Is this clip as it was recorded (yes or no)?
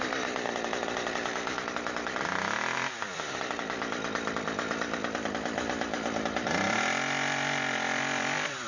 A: no